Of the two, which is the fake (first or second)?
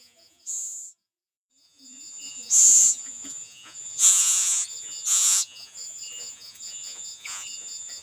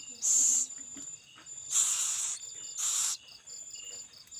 first